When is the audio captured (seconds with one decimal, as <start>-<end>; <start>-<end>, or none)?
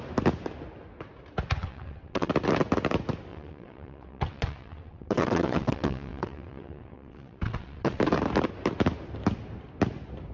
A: 0.0-1.6; 2.3-3.3; 8.0-10.3